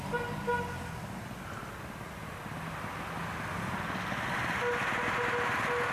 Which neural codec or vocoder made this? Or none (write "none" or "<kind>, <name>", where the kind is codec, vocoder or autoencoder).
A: none